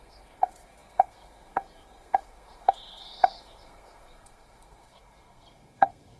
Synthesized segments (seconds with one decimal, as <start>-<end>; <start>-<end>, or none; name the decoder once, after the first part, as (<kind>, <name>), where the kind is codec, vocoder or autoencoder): 0.0-6.2 (codec, SNAC)